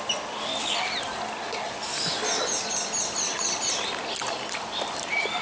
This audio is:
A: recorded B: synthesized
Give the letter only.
A